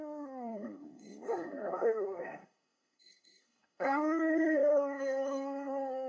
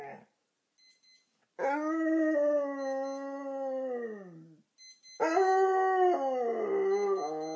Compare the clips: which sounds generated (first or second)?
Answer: first